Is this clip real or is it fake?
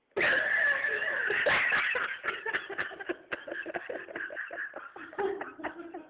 real